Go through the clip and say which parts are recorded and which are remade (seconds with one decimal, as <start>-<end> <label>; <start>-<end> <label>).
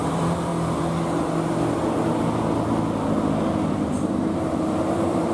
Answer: 0.0-0.5 remade; 0.5-3.7 recorded; 3.7-5.3 remade